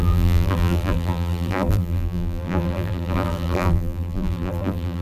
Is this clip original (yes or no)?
no